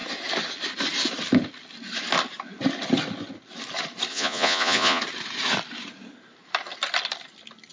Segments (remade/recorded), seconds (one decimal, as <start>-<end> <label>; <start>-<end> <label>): 0.0-4.1 recorded; 4.1-5.0 remade; 5.0-7.7 recorded